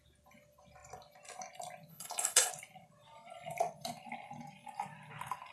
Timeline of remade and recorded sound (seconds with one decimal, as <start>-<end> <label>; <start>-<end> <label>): 0.0-1.9 recorded; 1.9-2.5 remade; 2.5-5.5 recorded